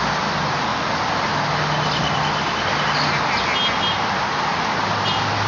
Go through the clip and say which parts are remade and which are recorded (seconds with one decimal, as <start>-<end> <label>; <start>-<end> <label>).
0.0-5.5 recorded